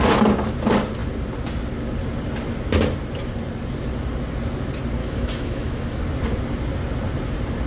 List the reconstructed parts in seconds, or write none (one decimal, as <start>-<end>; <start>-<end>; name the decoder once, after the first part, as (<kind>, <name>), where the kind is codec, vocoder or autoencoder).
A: 5.0-6.0 (autoencoder, DAC-VAE)